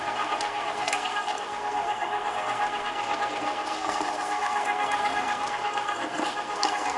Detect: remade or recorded remade